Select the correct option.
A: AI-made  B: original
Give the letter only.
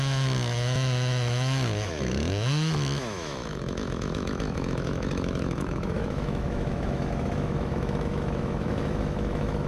A